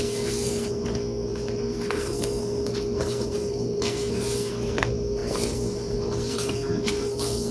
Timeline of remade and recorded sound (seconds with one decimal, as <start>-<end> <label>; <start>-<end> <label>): 0.0-7.5 remade